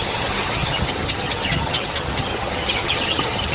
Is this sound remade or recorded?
remade